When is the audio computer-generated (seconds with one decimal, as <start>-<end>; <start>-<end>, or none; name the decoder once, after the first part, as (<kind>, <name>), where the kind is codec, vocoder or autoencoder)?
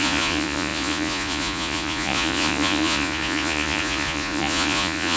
0.0-5.2 (vocoder, Vocos)